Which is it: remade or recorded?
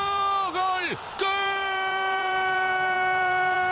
remade